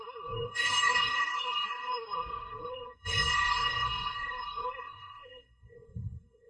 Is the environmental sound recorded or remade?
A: remade